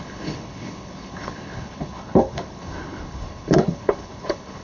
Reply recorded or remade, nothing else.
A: remade